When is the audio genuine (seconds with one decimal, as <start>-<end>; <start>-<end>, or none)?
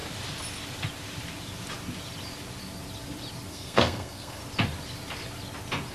0.0-3.5; 4.4-5.9